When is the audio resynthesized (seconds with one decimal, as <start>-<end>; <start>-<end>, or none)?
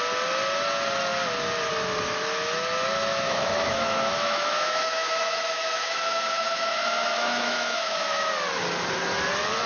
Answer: 3.1-8.3